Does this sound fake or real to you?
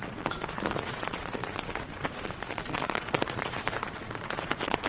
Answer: fake